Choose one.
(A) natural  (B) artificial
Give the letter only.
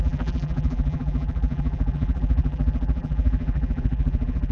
B